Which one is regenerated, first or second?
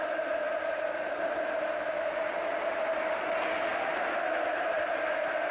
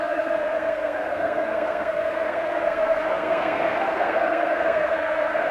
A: second